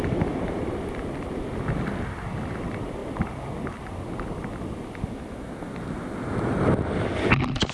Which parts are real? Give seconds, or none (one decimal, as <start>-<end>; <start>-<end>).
3.0-7.7